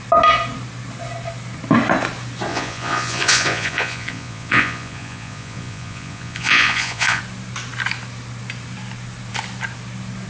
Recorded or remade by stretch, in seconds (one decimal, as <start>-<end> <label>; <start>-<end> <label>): 0.0-2.5 recorded; 2.5-7.2 remade; 7.2-10.3 recorded